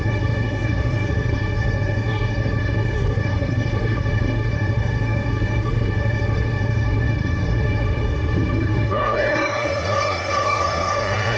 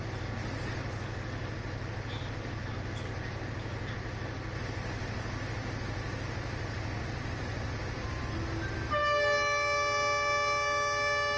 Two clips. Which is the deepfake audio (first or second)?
first